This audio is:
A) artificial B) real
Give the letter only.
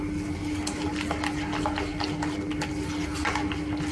A